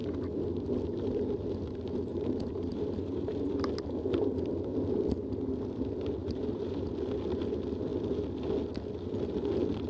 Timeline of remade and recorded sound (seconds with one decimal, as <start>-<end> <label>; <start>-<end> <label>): 0.0-2.1 recorded; 2.1-3.7 remade; 3.7-6.2 recorded; 6.2-6.9 remade; 6.9-9.9 recorded